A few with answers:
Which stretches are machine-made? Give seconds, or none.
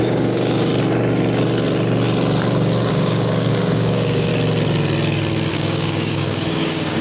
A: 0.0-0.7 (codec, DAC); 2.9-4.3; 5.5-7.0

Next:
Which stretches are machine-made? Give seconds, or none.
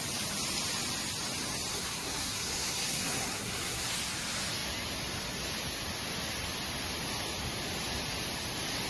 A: 1.7-3.9 (codec, SNAC)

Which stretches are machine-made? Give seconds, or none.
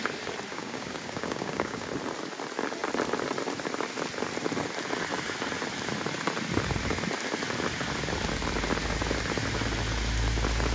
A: 0.5-1.9 (codec, DAC)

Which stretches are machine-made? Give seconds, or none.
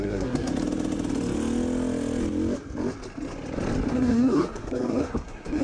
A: 0.0-0.5 (codec, SNAC); 3.9-5.6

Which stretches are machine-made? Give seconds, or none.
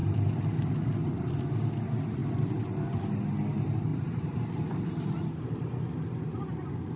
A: 0.0-1.5 (vocoder, BigVGAN v2); 2.2-3.1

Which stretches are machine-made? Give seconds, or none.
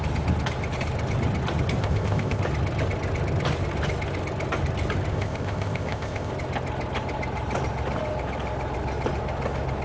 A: 1.8-2.4 (codec, ZipCodec); 5.1-6.3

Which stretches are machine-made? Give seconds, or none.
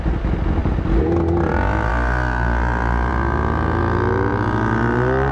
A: none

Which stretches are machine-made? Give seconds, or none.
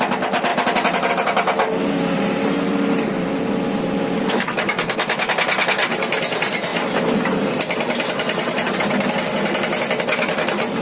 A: 0.5-1.1 (vocoder, BigVGAN v2); 4.8-5.3; 6.7-7.5